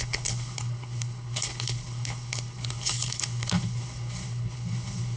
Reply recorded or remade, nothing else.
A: remade